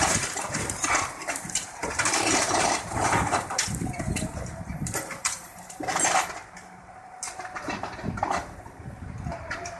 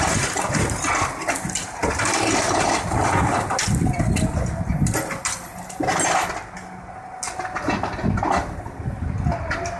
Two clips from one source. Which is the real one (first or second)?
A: second